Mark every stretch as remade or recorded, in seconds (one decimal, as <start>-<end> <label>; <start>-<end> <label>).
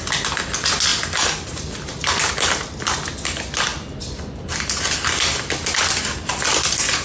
0.0-0.9 recorded; 0.9-2.3 remade; 2.3-3.7 recorded; 3.7-4.6 remade; 4.6-7.0 recorded